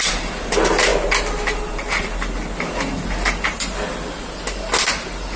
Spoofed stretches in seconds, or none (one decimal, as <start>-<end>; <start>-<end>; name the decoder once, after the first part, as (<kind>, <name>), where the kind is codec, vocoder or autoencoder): none